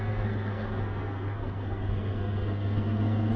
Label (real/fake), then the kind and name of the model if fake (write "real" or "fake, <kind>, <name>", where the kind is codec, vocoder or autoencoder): fake, codec, SNAC